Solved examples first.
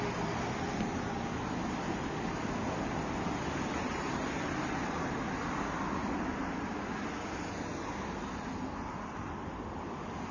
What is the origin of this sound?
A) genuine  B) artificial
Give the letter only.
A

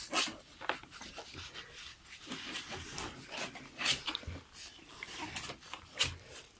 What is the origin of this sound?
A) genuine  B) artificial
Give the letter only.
A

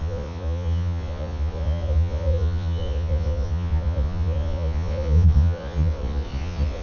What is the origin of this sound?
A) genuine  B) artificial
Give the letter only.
B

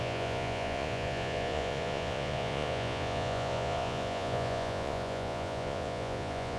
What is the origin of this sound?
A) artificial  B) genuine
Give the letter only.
A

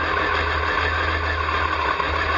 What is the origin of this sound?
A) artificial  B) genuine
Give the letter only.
B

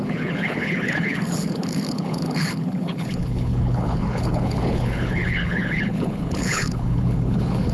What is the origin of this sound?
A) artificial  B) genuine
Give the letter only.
A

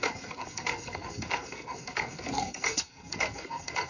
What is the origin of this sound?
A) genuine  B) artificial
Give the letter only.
B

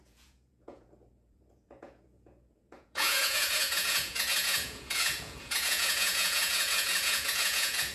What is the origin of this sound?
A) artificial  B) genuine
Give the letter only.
A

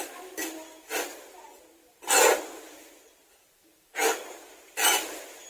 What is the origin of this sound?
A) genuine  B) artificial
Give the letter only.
A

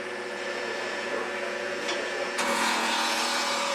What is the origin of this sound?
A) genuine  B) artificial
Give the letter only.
B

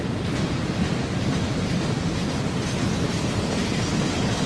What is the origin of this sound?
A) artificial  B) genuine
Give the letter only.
B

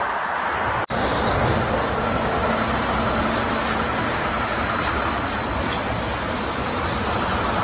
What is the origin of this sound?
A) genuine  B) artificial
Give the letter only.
A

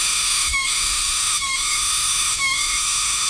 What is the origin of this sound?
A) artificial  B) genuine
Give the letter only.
A